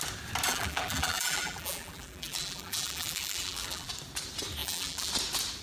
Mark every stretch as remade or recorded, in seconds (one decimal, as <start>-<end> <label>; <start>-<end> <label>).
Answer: 0.0-0.5 recorded; 0.5-3.9 remade; 3.9-4.6 recorded; 4.6-5.1 remade; 5.1-5.6 recorded